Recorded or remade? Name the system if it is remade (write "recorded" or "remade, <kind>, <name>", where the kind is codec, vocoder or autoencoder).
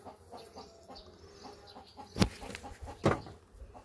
recorded